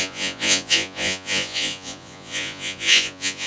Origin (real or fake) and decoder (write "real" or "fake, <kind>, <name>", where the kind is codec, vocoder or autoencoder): fake, vocoder, Vocos